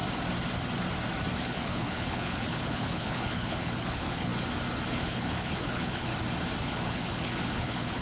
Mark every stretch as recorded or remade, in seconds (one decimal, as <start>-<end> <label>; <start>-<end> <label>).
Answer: 0.0-1.4 recorded; 1.4-4.3 remade; 4.3-4.9 recorded; 4.9-6.1 remade; 6.1-6.6 recorded; 6.6-8.0 remade